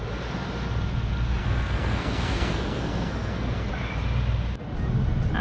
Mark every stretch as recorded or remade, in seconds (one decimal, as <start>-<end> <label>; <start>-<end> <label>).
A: 0.0-1.4 recorded; 1.4-3.7 remade; 3.7-5.4 recorded

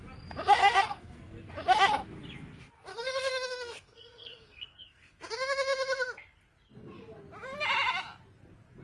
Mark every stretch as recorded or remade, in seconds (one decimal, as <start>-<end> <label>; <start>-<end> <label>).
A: 0.0-0.6 recorded; 0.6-1.5 remade; 1.5-2.9 recorded; 2.9-5.2 remade; 5.2-8.8 recorded

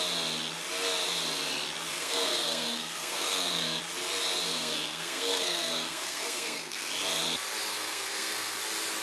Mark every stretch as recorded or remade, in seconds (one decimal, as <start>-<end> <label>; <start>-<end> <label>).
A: 0.0-1.9 recorded; 1.9-3.8 remade; 3.8-4.5 recorded; 4.5-6.9 remade; 6.9-7.7 recorded; 7.7-8.6 remade; 8.6-9.0 recorded

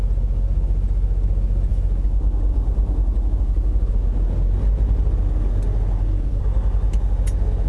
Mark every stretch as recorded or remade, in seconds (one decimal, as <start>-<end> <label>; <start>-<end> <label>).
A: 0.0-7.7 recorded

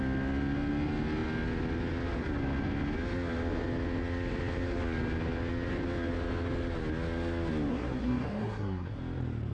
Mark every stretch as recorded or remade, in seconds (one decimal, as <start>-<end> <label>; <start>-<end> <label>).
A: 0.0-7.7 recorded; 7.7-9.0 remade; 9.0-9.5 recorded

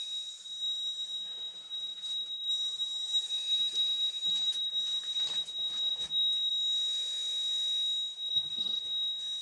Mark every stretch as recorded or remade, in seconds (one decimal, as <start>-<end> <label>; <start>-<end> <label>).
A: 0.0-8.3 recorded; 8.3-8.8 remade; 8.8-9.4 recorded

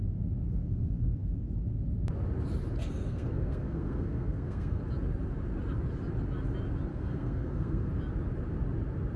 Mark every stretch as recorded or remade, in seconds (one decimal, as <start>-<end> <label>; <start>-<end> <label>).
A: 0.0-0.4 recorded; 0.4-1.5 remade; 1.5-2.8 recorded; 2.8-4.8 remade; 4.8-6.9 recorded; 6.9-7.9 remade; 7.9-9.2 recorded

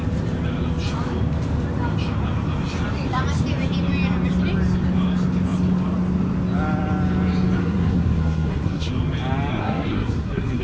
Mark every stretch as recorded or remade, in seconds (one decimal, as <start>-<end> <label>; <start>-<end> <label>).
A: 0.0-7.6 recorded; 7.6-8.9 remade; 8.9-9.5 recorded; 9.5-10.6 remade